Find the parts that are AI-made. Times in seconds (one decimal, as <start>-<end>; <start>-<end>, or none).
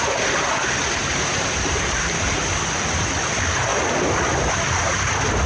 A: 1.0-2.3